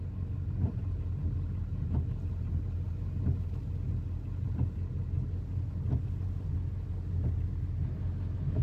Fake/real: real